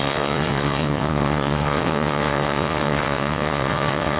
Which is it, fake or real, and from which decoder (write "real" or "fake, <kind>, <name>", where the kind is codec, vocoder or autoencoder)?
fake, vocoder, WaveNeXt